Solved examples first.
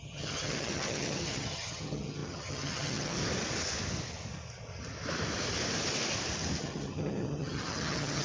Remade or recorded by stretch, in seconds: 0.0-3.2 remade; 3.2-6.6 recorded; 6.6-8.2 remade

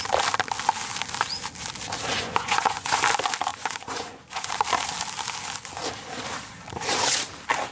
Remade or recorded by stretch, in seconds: 0.0-2.1 recorded; 2.1-3.0 remade; 3.0-3.5 recorded; 3.5-4.5 remade; 4.5-7.7 recorded